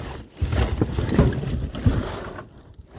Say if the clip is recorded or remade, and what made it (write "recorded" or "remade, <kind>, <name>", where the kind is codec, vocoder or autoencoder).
recorded